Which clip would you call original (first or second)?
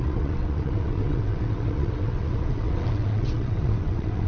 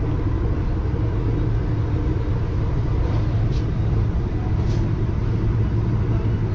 second